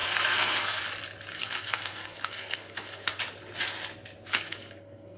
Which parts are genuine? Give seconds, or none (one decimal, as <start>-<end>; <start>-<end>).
0.8-1.3; 3.2-4.3